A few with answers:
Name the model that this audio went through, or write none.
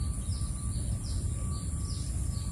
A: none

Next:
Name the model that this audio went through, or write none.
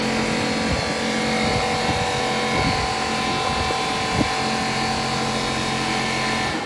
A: none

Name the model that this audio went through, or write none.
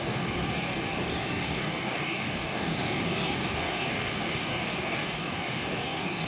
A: codec, DAC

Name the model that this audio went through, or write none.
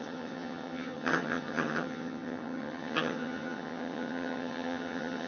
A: vocoder, HiFi-GAN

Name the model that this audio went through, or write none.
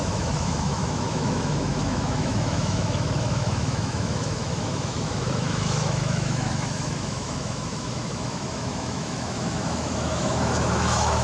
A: autoencoder, DAC-VAE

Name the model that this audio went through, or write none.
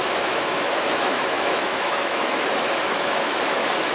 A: autoencoder, DAC-VAE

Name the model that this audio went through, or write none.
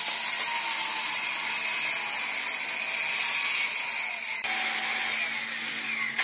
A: none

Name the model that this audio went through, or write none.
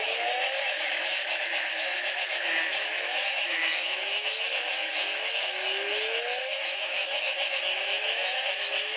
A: autoencoder, DAC-VAE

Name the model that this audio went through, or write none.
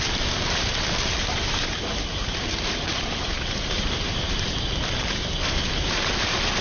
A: vocoder, BigVGAN v2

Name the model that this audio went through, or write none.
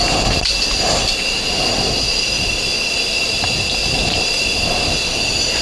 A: none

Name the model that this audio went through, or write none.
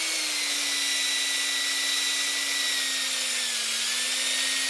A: none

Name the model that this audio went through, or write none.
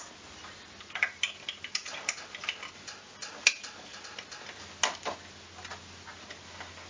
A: none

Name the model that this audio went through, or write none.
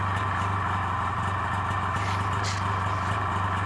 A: none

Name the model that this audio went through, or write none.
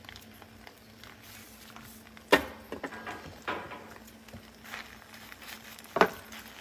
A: none